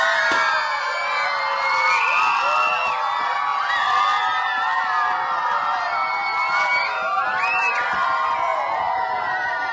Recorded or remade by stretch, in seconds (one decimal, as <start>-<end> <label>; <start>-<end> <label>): 0.0-9.7 recorded